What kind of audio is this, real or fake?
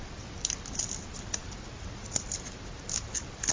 real